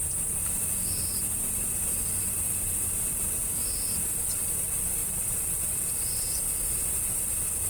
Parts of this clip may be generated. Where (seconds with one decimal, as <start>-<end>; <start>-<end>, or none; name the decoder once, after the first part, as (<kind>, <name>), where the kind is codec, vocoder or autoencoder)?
0.0-3.4 (vocoder, BigVGAN v2); 4.5-7.7